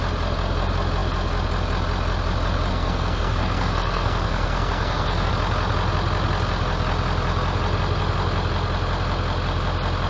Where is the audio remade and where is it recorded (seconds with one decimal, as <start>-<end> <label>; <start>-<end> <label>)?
0.0-2.7 recorded; 2.7-5.3 remade; 5.3-10.1 recorded